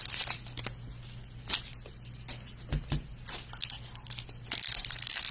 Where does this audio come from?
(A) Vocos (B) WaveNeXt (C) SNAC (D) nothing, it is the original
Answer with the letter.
D